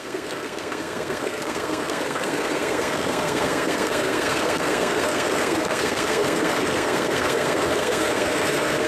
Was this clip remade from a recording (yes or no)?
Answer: yes